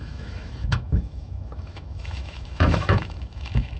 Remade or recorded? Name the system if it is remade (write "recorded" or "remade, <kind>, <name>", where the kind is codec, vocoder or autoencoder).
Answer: remade, autoencoder, DAC-VAE